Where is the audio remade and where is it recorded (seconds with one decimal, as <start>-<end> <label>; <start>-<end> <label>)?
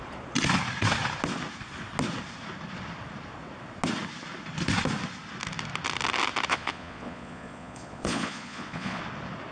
0.0-6.5 recorded; 6.5-9.0 remade; 9.0-9.5 recorded